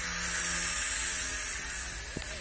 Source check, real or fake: real